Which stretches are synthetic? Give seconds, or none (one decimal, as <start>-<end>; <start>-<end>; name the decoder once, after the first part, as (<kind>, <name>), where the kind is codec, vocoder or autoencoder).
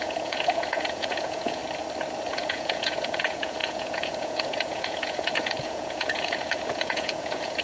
0.0-1.6 (vocoder, Vocos); 2.3-7.6